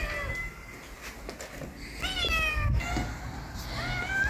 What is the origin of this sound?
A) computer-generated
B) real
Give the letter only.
B